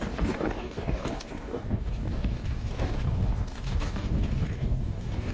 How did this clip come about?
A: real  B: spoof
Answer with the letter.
B